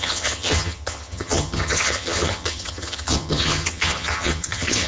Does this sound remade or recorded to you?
remade